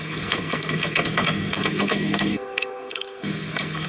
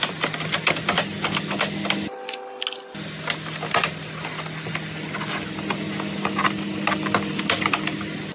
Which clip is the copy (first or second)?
first